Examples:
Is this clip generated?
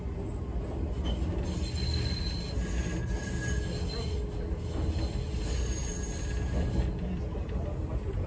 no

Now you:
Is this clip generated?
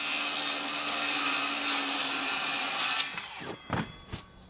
no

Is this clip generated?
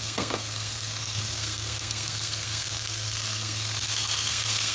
yes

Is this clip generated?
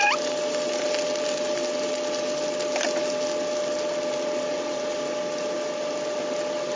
no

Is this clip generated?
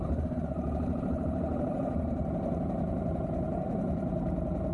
yes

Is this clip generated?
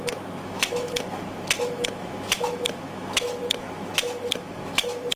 yes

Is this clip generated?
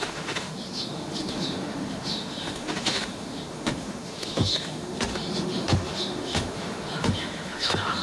yes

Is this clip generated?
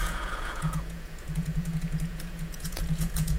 yes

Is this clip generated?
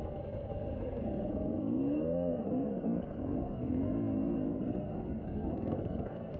yes